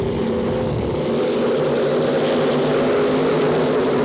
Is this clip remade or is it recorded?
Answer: recorded